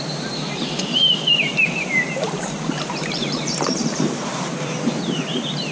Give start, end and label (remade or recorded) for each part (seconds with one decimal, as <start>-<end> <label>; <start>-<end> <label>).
0.0-1.5 recorded; 1.5-4.9 remade; 4.9-5.7 recorded